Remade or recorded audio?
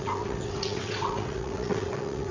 remade